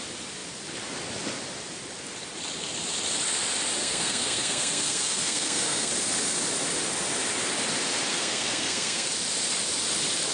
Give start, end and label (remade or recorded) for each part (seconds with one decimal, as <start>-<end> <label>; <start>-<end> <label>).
0.0-3.8 recorded; 3.8-5.9 remade; 5.9-8.1 recorded; 8.1-9.1 remade; 9.1-10.3 recorded